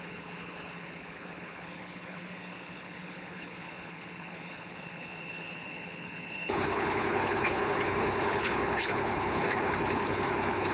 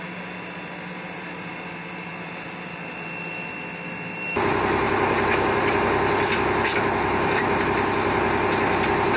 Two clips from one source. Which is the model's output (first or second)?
first